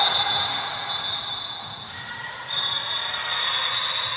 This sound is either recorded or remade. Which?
recorded